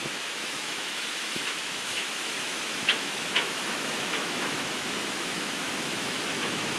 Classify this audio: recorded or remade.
remade